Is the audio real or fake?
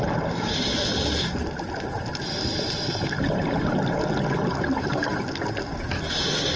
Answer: real